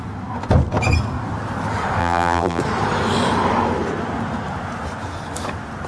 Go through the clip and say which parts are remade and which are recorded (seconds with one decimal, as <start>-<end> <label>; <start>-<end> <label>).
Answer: 0.0-2.0 recorded; 2.0-2.6 remade; 2.6-5.9 recorded